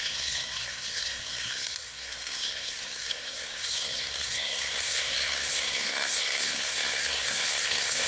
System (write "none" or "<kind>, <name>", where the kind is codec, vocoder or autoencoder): codec, SNAC